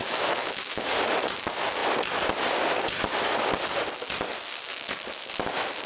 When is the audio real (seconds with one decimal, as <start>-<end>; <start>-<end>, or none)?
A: 0.9-5.9